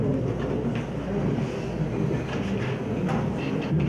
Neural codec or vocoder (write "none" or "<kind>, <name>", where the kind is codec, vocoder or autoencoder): none